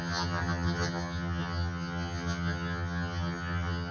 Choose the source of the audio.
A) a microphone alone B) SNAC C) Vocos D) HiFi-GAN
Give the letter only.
D